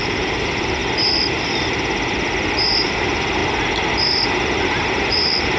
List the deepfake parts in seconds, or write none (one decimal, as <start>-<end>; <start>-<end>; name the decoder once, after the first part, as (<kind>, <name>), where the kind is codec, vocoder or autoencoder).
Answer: 0.0-0.8 (vocoder, BigVGAN v2); 2.8-3.4; 4.6-5.6